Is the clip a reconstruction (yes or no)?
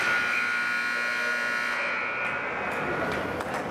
no